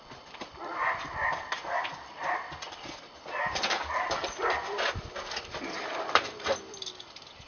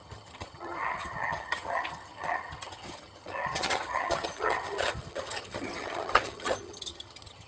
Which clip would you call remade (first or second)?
second